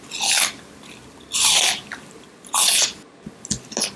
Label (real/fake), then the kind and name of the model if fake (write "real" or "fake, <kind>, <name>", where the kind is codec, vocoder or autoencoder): real